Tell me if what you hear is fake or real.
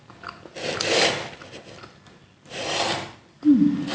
real